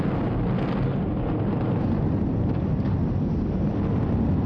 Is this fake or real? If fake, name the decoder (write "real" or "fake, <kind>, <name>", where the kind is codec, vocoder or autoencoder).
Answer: real